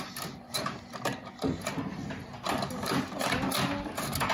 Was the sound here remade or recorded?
recorded